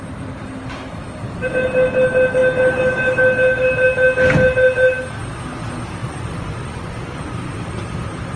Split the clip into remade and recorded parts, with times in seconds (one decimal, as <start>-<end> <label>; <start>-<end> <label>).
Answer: 0.0-6.0 recorded; 6.0-7.5 remade; 7.5-8.4 recorded